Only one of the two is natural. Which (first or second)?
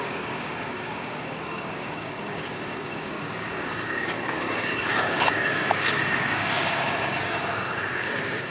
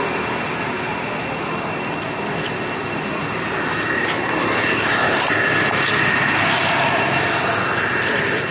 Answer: second